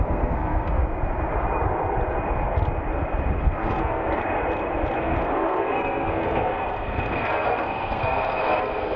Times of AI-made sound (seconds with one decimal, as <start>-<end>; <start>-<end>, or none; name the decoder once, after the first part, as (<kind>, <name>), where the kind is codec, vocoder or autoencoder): 0.0-0.8 (codec, SNAC); 3.4-4.2; 5.0-9.0